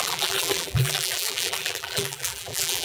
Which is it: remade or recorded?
remade